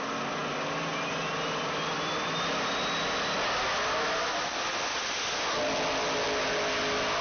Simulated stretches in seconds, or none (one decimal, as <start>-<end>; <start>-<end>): none